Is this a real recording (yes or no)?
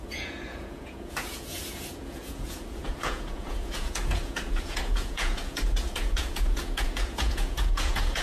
no